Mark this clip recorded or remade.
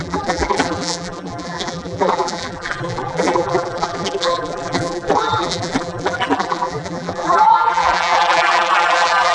remade